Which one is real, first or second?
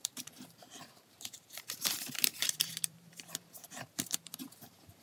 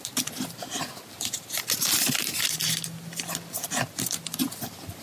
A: second